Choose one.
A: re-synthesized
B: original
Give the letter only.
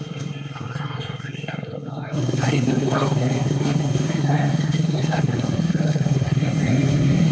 A